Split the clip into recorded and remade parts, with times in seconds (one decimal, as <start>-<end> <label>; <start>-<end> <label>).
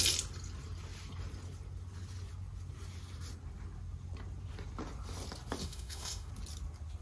0.0-5.6 recorded; 5.6-6.3 remade; 6.3-7.0 recorded